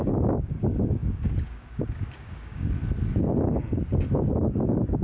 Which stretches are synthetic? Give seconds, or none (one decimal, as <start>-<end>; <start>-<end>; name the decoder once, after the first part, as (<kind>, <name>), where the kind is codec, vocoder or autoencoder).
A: 0.0-2.8 (codec, DAC); 4.1-5.0